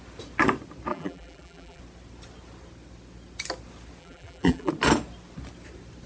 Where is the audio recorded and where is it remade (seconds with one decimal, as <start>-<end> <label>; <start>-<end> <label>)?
0.0-0.9 recorded; 0.9-1.8 remade; 1.8-4.0 recorded; 4.0-4.7 remade; 4.7-6.1 recorded